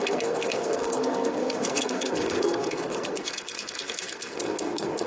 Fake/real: fake